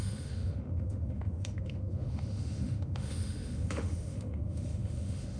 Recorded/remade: remade